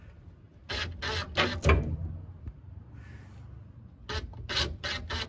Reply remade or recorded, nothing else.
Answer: recorded